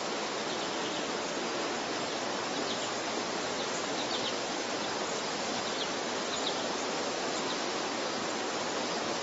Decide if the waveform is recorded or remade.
recorded